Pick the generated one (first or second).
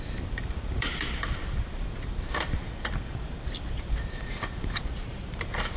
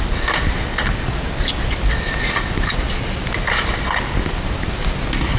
first